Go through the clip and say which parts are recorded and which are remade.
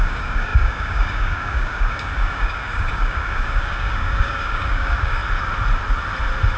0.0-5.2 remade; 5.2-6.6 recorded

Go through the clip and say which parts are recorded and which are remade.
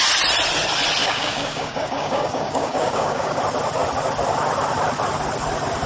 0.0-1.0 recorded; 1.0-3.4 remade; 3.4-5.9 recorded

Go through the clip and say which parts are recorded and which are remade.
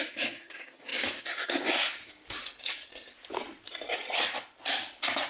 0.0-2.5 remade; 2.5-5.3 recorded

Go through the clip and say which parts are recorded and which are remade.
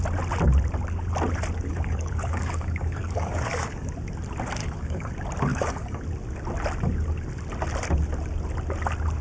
0.0-1.7 recorded; 1.7-3.9 remade; 3.9-4.6 recorded; 4.6-5.1 remade; 5.1-5.5 recorded; 5.5-6.0 remade; 6.0-9.2 recorded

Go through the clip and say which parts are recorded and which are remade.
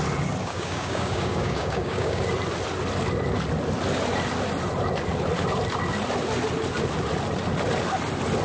0.0-0.4 recorded; 0.4-2.2 remade; 2.2-8.4 recorded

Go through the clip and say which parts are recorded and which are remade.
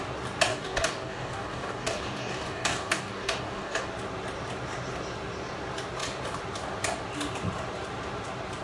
0.0-0.5 recorded; 0.5-3.9 remade; 3.9-8.6 recorded